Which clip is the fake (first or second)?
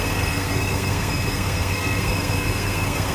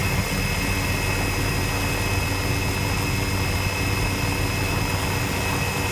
first